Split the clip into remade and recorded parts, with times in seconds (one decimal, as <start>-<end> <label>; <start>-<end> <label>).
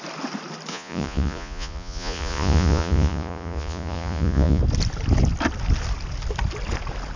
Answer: 0.0-0.7 recorded; 0.7-4.6 remade; 4.6-7.2 recorded